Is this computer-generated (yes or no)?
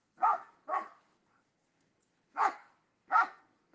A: yes